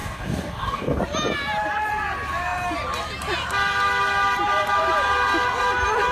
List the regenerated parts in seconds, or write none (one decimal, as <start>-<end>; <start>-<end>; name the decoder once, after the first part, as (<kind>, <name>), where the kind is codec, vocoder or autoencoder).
0.0-1.0 (codec, DAC)